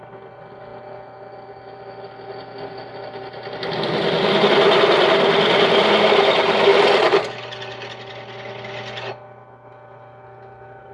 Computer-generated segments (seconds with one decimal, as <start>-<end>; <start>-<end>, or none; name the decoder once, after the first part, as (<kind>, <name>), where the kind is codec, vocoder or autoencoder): none